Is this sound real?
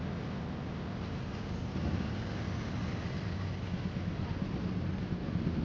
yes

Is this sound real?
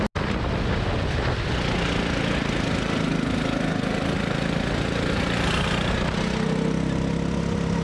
yes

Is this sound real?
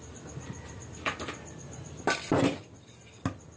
yes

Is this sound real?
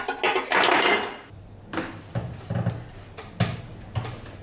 yes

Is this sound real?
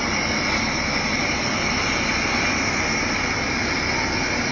yes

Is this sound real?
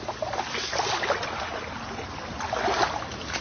yes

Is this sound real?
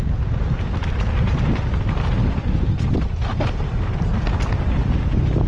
yes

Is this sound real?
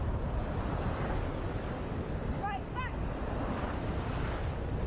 yes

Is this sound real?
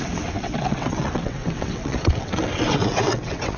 no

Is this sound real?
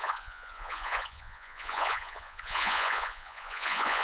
no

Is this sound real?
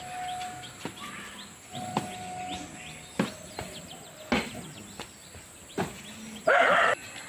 yes